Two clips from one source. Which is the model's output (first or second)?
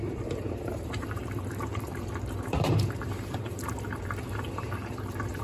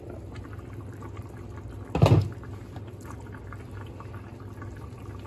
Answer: first